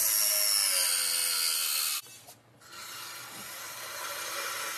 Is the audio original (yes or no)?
yes